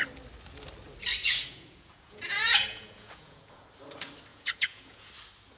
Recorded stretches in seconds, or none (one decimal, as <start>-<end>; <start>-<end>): 0.0-1.2; 3.6-4.3; 5.1-5.6